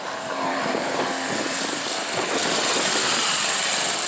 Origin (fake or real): fake